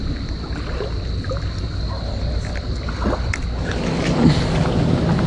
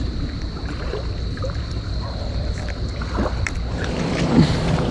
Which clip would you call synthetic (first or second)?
second